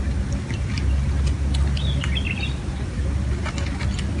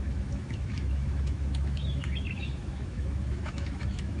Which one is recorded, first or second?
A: first